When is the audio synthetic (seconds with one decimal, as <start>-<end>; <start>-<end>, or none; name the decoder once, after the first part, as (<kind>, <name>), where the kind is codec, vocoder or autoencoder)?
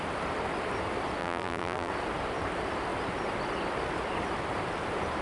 1.2-1.9 (vocoder, BigVGAN v2)